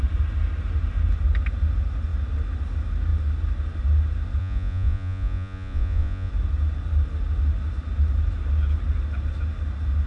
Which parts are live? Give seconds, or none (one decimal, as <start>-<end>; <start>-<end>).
0.0-4.4; 6.3-10.1